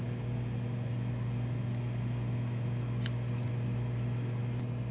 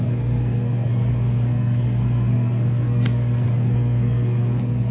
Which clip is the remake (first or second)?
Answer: second